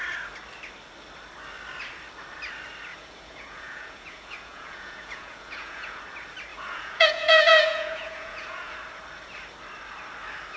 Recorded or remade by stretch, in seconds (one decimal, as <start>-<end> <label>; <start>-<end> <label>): 0.0-2.9 recorded; 2.9-6.0 remade; 6.0-6.5 recorded; 6.5-8.7 remade; 8.7-10.6 recorded